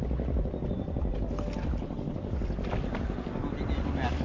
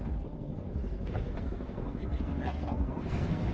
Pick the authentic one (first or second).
first